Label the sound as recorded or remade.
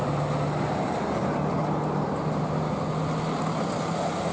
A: recorded